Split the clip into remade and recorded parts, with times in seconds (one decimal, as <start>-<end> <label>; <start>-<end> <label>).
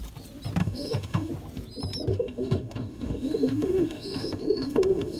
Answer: 0.0-0.6 recorded; 0.6-1.3 remade; 1.3-2.1 recorded; 2.1-5.2 remade